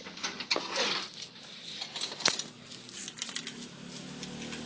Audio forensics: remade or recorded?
recorded